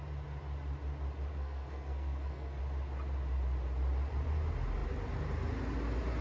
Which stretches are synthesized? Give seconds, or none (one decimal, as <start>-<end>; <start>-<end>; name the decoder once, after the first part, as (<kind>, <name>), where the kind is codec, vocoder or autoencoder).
1.3-2.6 (codec, SNAC)